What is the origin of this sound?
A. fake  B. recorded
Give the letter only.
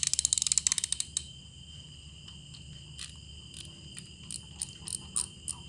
B